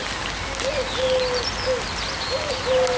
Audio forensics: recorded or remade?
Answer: recorded